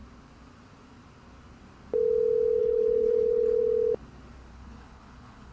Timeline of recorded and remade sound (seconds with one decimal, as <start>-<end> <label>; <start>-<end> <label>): 0.0-2.6 recorded; 2.6-3.6 remade; 3.6-4.5 recorded; 4.5-5.5 remade